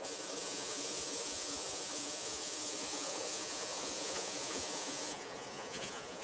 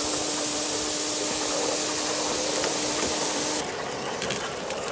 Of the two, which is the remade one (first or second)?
first